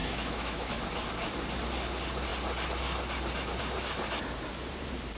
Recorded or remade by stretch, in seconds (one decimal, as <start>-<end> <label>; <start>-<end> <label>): 0.0-0.7 remade; 0.7-5.2 recorded